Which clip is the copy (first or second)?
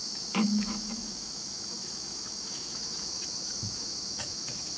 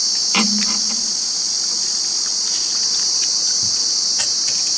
first